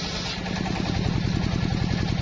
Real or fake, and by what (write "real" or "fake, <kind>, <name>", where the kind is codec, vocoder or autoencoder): real